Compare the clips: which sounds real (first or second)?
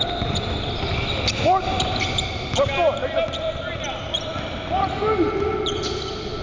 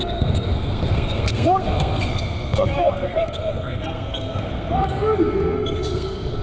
first